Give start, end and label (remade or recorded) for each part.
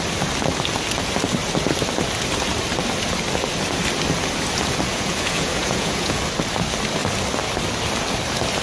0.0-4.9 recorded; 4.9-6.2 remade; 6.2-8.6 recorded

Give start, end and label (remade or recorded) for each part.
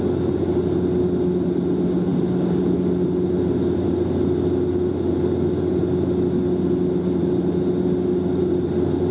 0.0-9.1 recorded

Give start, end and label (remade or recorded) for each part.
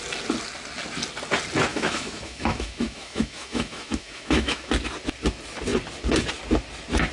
0.0-1.7 recorded; 1.7-4.7 remade; 4.7-7.1 recorded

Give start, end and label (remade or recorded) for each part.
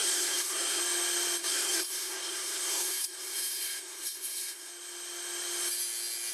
0.0-0.8 remade; 0.8-1.4 recorded; 1.4-4.7 remade; 4.7-6.3 recorded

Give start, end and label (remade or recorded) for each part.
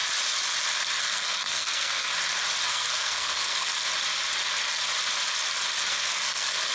0.0-1.0 recorded; 1.0-2.1 remade; 2.1-2.7 recorded; 2.7-3.7 remade; 3.7-5.9 recorded; 5.9-6.7 remade